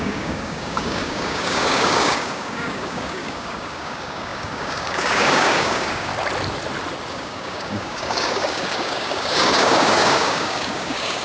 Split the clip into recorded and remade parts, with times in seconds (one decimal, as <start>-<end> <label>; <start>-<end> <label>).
0.0-6.1 remade; 6.1-7.1 recorded; 7.1-11.2 remade